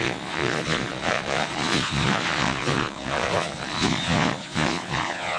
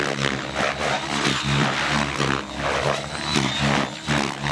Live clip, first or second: second